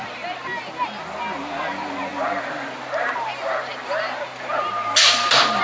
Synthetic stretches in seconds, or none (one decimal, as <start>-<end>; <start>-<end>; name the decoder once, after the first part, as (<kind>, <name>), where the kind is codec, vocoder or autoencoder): none